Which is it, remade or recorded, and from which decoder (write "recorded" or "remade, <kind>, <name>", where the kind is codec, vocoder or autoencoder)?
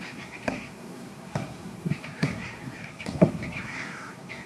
remade, codec, SNAC